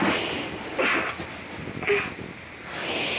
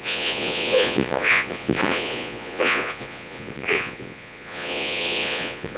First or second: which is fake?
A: second